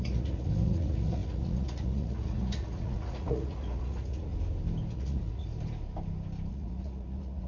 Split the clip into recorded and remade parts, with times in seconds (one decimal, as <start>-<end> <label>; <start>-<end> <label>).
0.0-4.3 remade; 4.3-4.9 recorded; 4.9-5.5 remade; 5.5-6.5 recorded; 6.5-7.5 remade